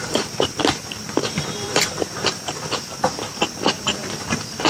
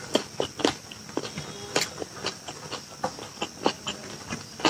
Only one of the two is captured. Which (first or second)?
second